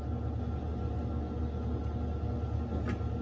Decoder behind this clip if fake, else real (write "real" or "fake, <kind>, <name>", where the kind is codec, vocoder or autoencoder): real